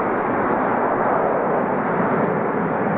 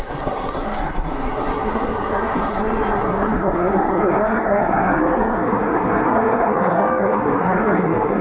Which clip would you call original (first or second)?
first